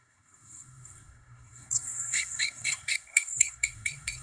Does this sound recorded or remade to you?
remade